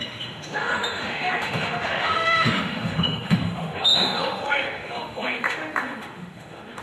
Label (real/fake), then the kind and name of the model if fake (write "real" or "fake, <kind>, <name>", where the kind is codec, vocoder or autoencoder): fake, autoencoder, DAC-VAE